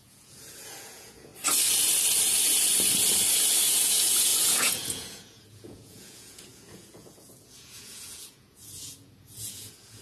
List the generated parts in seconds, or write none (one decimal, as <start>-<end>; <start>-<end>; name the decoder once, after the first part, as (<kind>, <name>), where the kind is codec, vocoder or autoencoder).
0.0-1.3 (vocoder, Vocos); 3.7-10.0